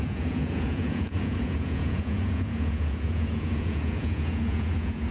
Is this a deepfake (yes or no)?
yes